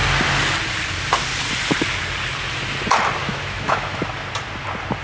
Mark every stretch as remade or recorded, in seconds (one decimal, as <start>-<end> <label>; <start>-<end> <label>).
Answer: 0.0-3.2 recorded; 3.2-4.0 remade; 4.0-5.0 recorded

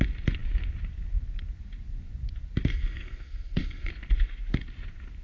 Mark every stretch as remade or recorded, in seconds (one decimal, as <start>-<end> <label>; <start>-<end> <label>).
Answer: 0.0-2.7 recorded; 2.7-3.9 remade; 3.9-5.2 recorded

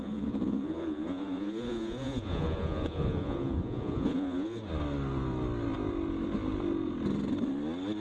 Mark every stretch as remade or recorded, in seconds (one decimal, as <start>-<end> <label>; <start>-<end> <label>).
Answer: 0.0-4.6 remade; 4.6-8.0 recorded

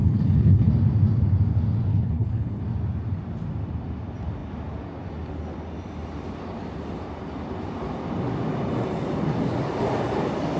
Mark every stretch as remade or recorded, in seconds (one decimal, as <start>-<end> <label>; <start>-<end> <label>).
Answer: 0.0-0.7 remade; 0.7-1.9 recorded; 1.9-2.6 remade; 2.6-10.6 recorded

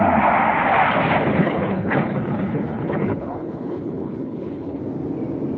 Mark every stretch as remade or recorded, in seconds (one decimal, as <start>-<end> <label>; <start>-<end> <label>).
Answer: 0.0-1.4 recorded; 1.4-4.8 remade; 4.8-5.6 recorded

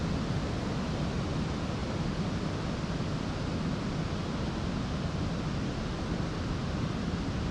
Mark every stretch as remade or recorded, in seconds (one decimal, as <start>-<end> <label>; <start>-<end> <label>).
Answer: 0.0-7.5 recorded

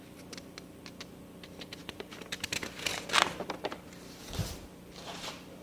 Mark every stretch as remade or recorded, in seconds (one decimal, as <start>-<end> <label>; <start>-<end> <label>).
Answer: 0.0-1.8 recorded; 1.8-5.6 remade

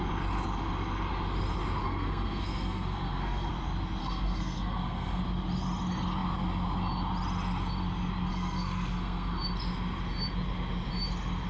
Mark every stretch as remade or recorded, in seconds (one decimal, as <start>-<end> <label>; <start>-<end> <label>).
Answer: 0.0-1.8 recorded; 1.8-3.5 remade; 3.5-4.0 recorded; 4.0-5.2 remade; 5.2-8.3 recorded; 8.3-9.3 remade; 9.3-11.5 recorded